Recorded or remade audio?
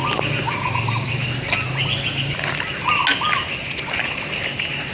recorded